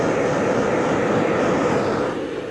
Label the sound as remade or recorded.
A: recorded